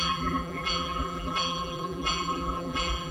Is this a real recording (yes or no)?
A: no